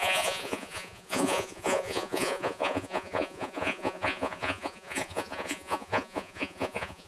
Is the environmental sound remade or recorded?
remade